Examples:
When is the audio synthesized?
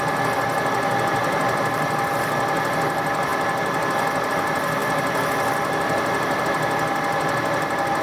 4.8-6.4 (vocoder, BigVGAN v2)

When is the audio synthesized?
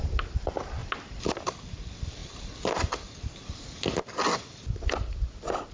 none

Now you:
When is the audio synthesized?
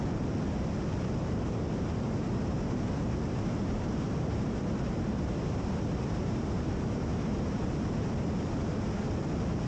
1.2-7.7 (vocoder, BigVGAN v2)